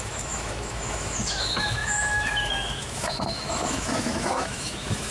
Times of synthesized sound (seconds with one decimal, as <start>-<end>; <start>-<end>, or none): 0.0-5.1